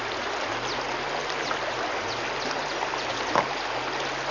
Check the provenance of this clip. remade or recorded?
recorded